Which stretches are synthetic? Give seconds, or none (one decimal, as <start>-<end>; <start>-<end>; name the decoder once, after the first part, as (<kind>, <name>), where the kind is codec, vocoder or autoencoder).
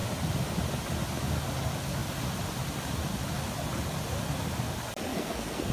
5.1-5.7 (codec, SNAC)